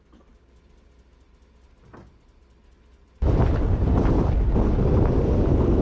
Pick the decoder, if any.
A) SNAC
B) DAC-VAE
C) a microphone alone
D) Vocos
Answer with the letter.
C